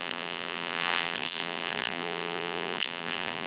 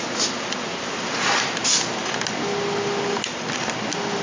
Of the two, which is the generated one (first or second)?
first